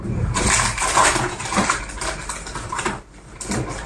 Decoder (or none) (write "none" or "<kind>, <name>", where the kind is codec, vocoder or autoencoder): vocoder, BigVGAN v2